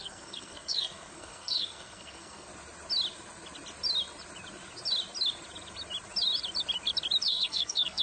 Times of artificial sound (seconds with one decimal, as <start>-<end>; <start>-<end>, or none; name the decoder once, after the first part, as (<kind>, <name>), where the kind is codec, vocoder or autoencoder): 0.0-2.5 (codec, SNAC); 7.3-8.0